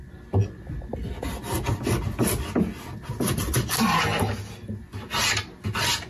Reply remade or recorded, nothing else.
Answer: recorded